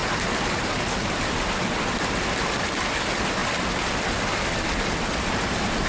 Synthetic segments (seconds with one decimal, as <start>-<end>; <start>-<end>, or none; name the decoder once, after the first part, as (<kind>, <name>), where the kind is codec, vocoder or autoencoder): none